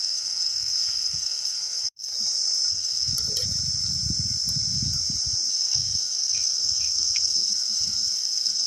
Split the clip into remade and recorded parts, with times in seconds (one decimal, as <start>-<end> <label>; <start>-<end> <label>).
0.0-2.1 remade; 2.1-2.7 recorded; 2.7-3.1 remade; 3.1-5.5 recorded; 5.5-8.7 remade